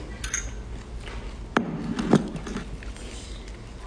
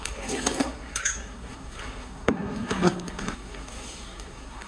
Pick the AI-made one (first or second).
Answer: second